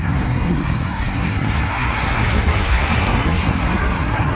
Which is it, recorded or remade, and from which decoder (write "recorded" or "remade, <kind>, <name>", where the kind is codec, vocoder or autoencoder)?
remade, codec, SNAC